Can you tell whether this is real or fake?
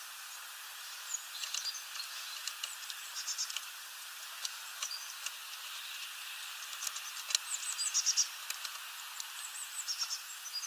real